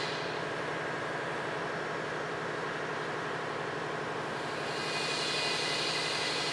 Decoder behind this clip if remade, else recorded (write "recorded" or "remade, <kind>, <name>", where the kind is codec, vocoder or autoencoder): recorded